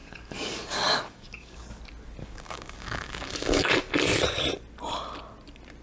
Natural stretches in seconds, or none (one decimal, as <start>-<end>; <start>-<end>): 1.8-2.2; 3.7-5.8